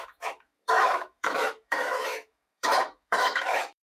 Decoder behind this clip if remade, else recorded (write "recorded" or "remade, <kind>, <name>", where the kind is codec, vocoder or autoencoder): remade, autoencoder, DAC-VAE